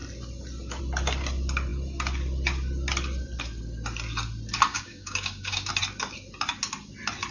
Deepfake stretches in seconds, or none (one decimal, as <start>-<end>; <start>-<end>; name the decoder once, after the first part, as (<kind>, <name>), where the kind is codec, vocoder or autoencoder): 4.7-5.7 (codec, DAC)